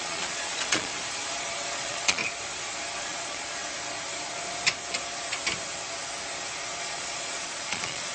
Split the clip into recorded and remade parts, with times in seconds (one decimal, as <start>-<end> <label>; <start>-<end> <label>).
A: 0.0-0.9 remade; 0.9-1.7 recorded; 1.7-2.2 remade; 2.2-3.0 recorded; 3.0-3.6 remade; 3.6-6.8 recorded; 6.8-8.1 remade